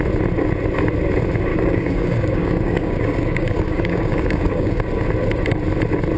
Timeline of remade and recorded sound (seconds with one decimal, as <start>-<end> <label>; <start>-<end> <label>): 0.0-1.5 recorded; 1.5-4.8 remade; 4.8-6.2 recorded